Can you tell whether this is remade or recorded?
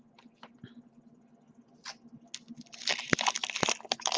recorded